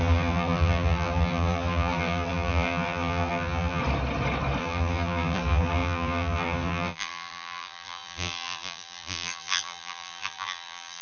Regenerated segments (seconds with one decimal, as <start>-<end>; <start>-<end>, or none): 0.0-3.8; 4.6-11.0